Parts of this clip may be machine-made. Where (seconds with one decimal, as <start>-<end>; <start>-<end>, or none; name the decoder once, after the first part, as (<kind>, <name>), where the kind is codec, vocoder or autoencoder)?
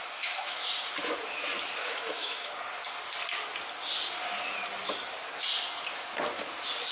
0.0-0.6 (autoencoder, DAC-VAE); 1.8-2.5